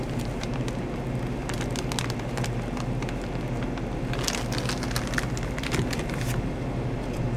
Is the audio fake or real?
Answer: real